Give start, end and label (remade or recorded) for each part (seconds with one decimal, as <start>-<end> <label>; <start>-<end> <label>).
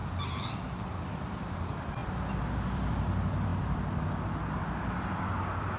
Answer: 0.0-2.0 remade; 2.0-2.5 recorded; 2.5-3.5 remade; 3.5-4.6 recorded; 4.6-5.8 remade